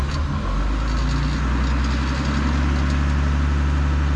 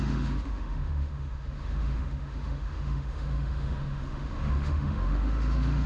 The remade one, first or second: second